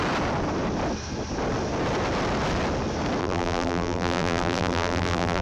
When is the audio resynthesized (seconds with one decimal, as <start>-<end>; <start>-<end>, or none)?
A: 3.2-5.4